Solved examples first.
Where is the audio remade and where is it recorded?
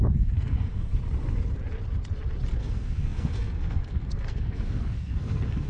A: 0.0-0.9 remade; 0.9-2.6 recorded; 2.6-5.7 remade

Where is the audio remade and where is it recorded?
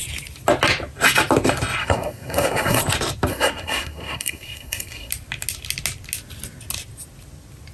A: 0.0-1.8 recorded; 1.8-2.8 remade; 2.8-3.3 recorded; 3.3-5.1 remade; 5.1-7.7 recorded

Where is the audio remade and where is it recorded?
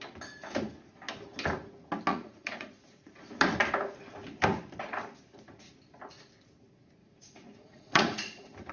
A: 0.0-2.1 recorded; 2.1-3.3 remade; 3.3-7.0 recorded; 7.0-8.7 remade